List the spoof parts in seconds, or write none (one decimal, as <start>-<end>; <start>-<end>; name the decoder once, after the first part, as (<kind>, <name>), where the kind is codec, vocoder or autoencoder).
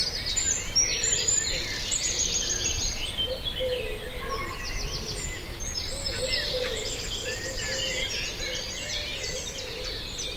0.9-1.6 (vocoder, BigVGAN v2); 7.2-9.8